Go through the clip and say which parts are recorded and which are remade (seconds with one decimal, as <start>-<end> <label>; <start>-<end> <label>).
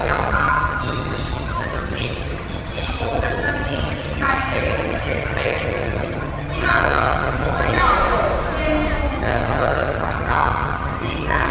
0.0-7.8 remade; 7.8-9.1 recorded; 9.1-11.5 remade